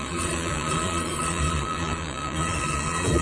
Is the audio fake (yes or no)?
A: yes